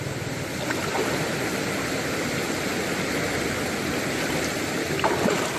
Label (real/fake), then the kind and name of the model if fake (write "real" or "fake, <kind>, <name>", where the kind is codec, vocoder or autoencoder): real